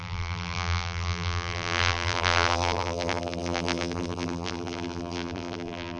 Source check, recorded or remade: remade